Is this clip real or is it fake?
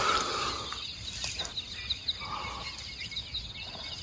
real